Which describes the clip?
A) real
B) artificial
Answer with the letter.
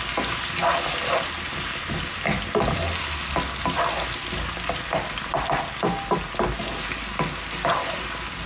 A